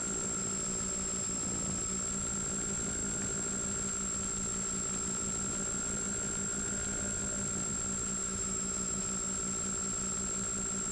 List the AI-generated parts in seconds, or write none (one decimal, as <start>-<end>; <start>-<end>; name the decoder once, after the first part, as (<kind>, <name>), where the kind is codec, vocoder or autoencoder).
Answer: 8.2-9.0 (autoencoder, DAC-VAE)

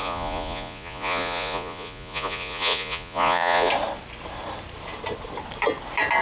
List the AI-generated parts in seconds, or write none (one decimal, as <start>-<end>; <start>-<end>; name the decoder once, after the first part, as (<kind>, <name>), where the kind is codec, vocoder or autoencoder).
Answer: 0.0-3.7 (vocoder, Vocos)

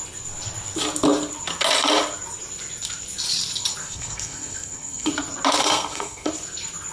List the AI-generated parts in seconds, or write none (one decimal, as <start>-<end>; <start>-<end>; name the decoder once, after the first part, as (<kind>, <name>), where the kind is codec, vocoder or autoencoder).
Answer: 3.8-5.1 (codec, SNAC); 5.6-6.3

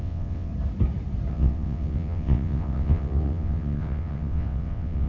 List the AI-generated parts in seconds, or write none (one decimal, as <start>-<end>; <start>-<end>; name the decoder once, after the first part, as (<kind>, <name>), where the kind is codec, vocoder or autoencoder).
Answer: 0.0-0.5 (vocoder, WaveNeXt); 1.3-5.1

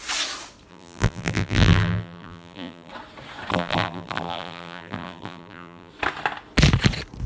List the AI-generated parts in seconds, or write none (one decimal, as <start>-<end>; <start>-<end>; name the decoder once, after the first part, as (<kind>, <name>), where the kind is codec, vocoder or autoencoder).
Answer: 0.7-2.9 (vocoder, BigVGAN v2); 3.5-5.9

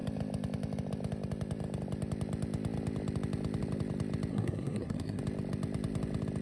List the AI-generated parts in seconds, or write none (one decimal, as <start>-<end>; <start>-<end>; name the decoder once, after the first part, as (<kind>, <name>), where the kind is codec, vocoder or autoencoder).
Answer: 4.3-5.2 (codec, SNAC)

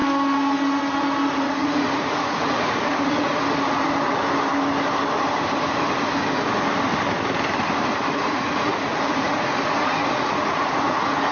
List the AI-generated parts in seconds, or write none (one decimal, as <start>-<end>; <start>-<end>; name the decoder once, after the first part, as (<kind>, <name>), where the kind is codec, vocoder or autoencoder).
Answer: 1.3-3.3 (vocoder, Vocos); 8.1-11.3